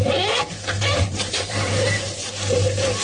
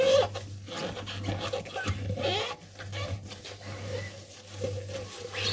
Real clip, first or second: second